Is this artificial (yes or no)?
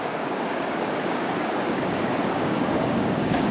yes